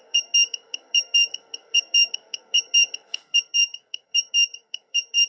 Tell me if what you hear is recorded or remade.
remade